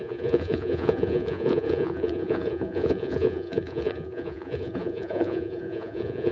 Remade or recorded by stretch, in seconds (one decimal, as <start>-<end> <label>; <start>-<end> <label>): 0.0-6.3 remade